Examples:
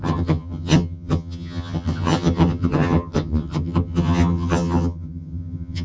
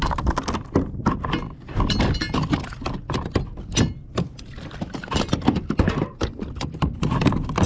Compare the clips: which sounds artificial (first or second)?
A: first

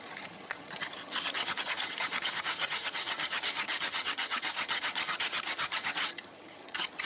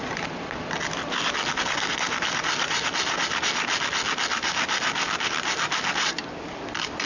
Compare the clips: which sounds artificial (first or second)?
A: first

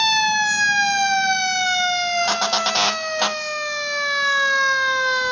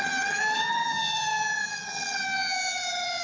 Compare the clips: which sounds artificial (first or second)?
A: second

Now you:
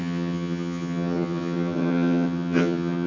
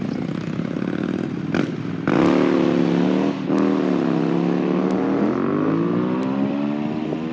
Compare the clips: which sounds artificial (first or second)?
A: first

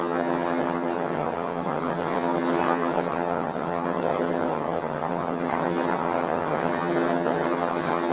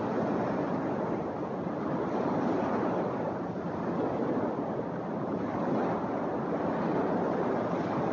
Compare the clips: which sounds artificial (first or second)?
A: first